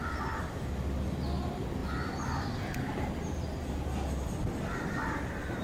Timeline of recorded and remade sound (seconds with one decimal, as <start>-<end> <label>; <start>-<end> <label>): 0.0-5.6 recorded